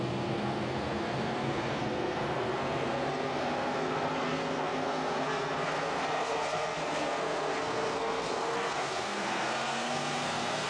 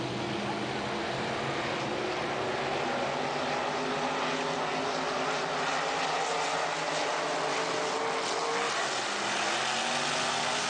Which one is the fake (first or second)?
first